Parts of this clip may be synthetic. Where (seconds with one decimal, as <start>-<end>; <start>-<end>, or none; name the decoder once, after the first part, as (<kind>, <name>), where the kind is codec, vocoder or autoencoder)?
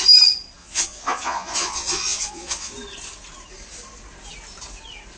0.6-2.7 (vocoder, Vocos)